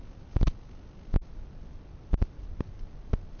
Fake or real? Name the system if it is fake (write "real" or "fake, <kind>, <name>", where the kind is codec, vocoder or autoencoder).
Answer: real